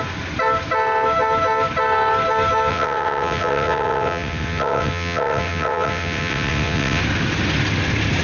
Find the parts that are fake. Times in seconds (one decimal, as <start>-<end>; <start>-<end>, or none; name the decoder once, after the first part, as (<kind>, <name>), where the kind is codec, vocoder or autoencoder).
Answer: 2.7-7.0 (vocoder, WaveNeXt)